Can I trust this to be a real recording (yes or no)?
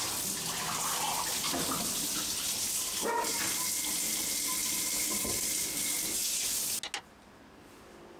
yes